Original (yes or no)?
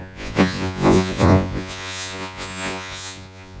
no